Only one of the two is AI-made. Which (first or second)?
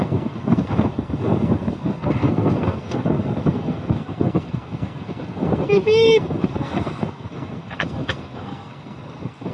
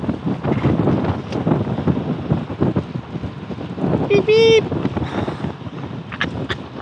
first